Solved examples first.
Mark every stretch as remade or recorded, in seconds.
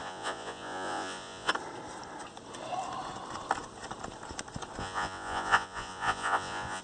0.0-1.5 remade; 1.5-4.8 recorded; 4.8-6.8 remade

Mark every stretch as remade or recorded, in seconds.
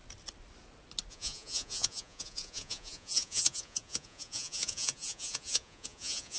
0.0-1.1 recorded; 1.1-6.4 remade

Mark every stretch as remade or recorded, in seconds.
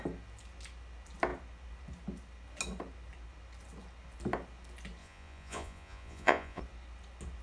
0.0-5.0 recorded; 5.0-6.6 remade; 6.6-7.4 recorded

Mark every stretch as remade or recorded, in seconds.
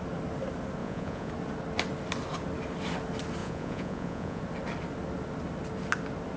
0.0-0.8 recorded; 0.8-1.3 remade; 1.3-3.4 recorded; 3.4-4.4 remade; 4.4-6.4 recorded